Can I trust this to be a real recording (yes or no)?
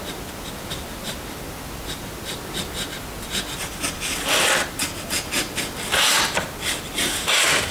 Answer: yes